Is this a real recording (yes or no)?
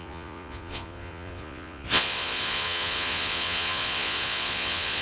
no